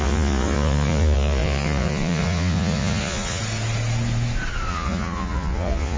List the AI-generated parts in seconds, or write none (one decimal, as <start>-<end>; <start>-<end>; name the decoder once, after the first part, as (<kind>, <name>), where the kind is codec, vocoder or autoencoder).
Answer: 0.0-3.4 (vocoder, Vocos); 4.7-6.0